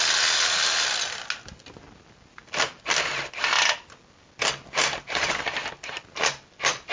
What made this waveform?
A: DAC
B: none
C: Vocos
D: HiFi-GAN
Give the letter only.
B